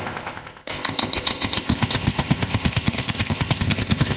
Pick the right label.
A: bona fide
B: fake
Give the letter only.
B